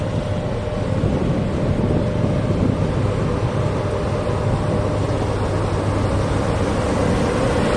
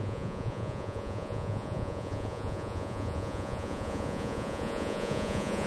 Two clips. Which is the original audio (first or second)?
first